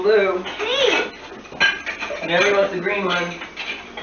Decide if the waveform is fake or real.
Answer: real